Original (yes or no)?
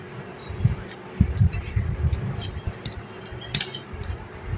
yes